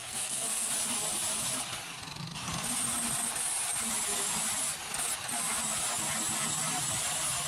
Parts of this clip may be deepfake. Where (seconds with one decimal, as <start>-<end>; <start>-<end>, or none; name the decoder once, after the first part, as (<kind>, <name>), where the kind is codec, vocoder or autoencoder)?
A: 0.0-0.7 (codec, SNAC)